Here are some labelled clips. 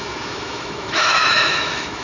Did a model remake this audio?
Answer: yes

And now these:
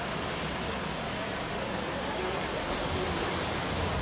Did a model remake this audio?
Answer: no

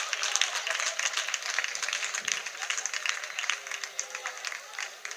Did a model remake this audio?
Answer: no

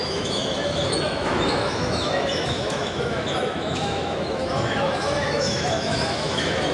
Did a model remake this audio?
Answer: yes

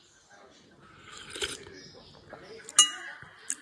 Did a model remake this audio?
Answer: no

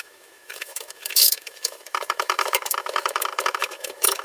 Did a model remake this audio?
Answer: yes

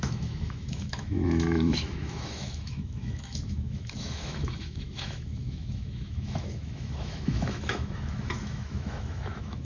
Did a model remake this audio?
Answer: yes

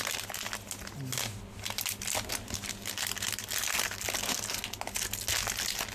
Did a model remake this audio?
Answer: no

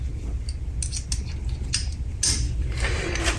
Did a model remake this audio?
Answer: no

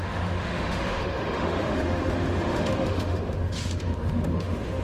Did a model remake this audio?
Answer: yes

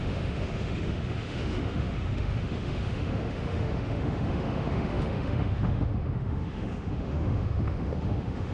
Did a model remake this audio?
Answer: yes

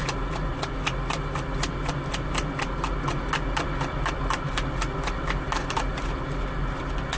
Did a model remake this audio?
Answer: no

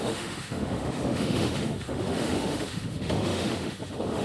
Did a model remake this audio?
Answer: yes